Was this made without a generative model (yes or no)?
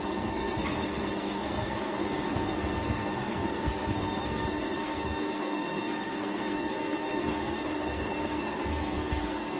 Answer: no